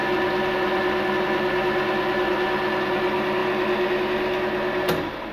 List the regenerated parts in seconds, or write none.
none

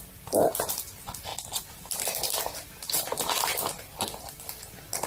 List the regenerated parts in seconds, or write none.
1.3-1.8 (vocoder, BigVGAN v2); 3.5-4.4

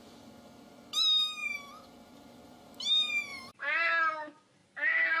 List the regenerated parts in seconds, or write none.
1.4-2.7 (vocoder, BigVGAN v2); 3.3-4.0; 4.6-5.2

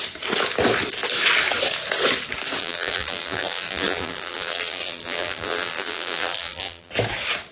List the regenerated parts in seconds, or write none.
2.6-6.9 (vocoder, BigVGAN v2)